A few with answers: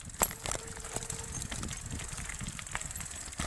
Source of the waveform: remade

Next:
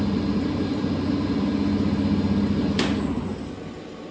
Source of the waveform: recorded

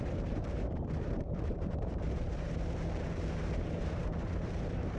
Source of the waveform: remade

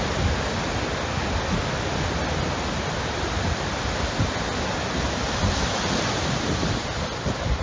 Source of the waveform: recorded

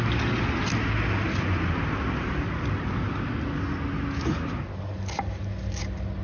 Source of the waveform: recorded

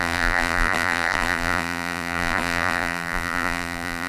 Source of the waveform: remade